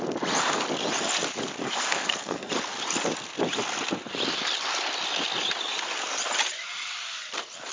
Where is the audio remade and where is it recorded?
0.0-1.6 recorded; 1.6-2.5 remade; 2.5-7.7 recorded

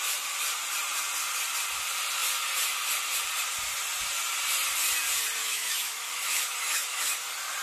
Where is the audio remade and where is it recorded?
0.0-5.4 recorded; 5.4-7.0 remade; 7.0-7.6 recorded

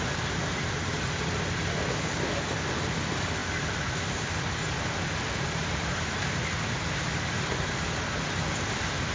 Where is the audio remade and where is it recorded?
0.0-9.1 recorded

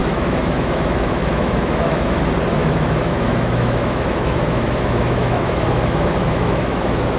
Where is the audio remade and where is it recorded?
0.0-2.2 remade; 2.2-2.6 recorded; 2.6-7.2 remade

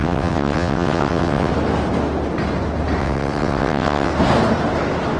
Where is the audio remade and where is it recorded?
0.0-1.5 remade; 1.5-3.0 recorded; 3.0-4.1 remade; 4.1-5.2 recorded

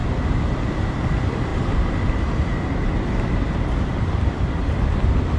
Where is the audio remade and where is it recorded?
0.0-0.9 recorded; 0.9-5.4 remade

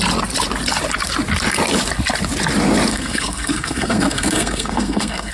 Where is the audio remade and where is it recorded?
0.0-2.9 recorded; 2.9-5.3 remade

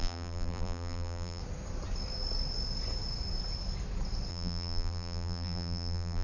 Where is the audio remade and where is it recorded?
0.0-1.4 remade; 1.4-4.3 recorded; 4.3-6.2 remade